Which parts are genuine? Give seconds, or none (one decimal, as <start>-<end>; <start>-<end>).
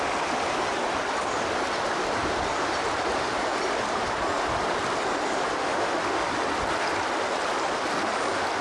0.0-5.6; 6.3-8.6